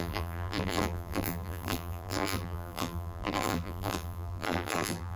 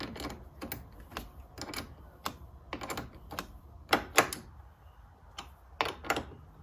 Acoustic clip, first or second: second